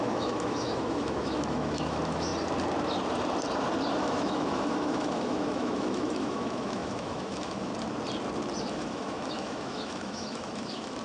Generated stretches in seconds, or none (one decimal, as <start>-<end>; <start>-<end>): 0.0-2.3; 4.0-7.7; 8.7-11.0